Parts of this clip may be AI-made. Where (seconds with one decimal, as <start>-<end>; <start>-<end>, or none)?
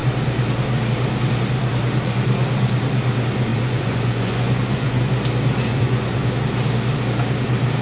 3.5-5.0; 5.7-6.3